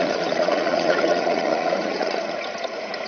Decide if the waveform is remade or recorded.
remade